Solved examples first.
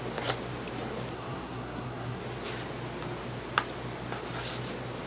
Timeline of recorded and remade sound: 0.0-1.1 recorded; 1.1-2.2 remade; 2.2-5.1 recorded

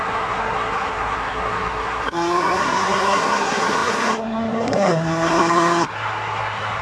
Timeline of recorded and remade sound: 0.0-6.8 remade

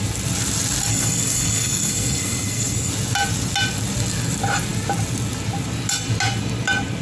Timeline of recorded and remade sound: 0.0-0.9 recorded; 0.9-2.9 remade; 2.9-7.0 recorded

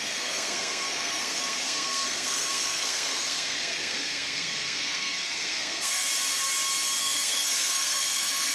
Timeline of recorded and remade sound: 0.0-6.1 remade; 6.1-7.0 recorded; 7.0-8.5 remade

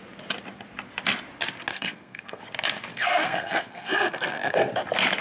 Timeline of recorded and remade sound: 0.0-1.7 recorded; 1.7-2.4 remade; 2.4-2.9 recorded; 2.9-4.7 remade; 4.7-5.2 recorded

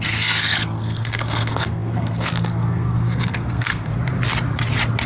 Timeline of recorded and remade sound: 0.0-3.9 remade; 3.9-5.1 recorded

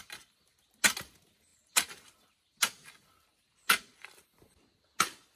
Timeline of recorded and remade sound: 0.0-5.4 recorded

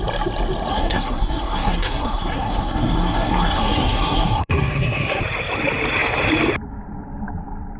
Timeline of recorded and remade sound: 0.0-0.7 recorded; 0.7-5.2 remade; 5.2-7.8 recorded